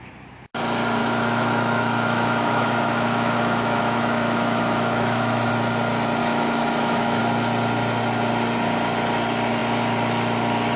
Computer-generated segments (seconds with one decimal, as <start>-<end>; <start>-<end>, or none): 1.0-5.5; 6.2-7.2